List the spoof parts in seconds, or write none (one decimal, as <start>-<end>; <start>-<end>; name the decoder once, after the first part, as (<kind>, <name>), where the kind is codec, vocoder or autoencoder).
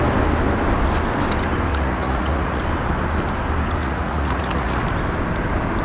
1.7-2.6 (vocoder, Vocos); 3.8-4.8